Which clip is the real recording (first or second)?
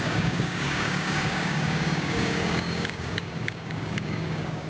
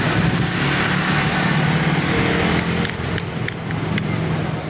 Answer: second